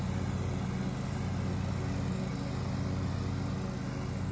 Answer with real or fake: real